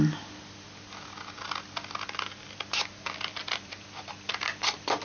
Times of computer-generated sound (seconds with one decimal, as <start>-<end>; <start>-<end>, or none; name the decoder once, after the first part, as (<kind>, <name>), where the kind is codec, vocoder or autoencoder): 3.4-4.3 (vocoder, BigVGAN v2)